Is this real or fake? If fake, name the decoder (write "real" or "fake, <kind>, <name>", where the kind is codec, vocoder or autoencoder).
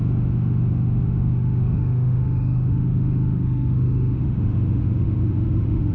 fake, autoencoder, DAC-VAE